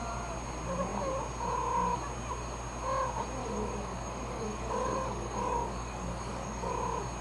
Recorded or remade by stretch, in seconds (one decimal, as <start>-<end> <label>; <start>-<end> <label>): 0.0-3.4 recorded; 3.4-6.7 remade; 6.7-7.2 recorded